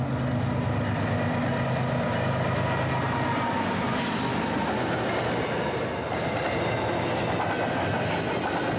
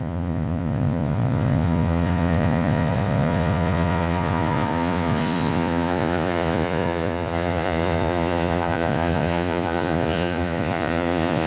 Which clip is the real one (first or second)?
first